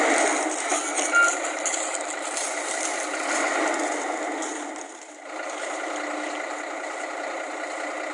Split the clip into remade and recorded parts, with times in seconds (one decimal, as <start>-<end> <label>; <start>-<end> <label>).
0.0-8.1 recorded